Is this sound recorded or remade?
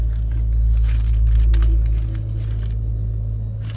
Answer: recorded